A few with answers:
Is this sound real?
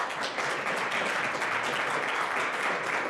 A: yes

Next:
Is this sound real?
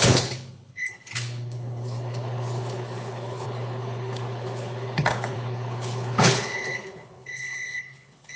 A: no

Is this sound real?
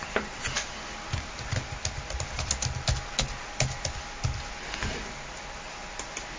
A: yes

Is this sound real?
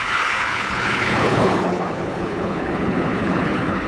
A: no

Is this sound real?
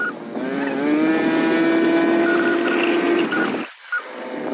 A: yes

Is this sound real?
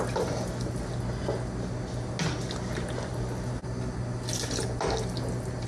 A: yes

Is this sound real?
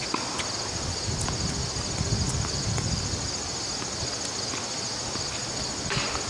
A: yes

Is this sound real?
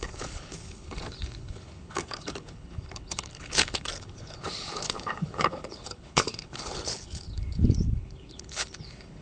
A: no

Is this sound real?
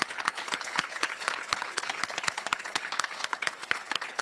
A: no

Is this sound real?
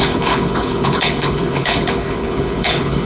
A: no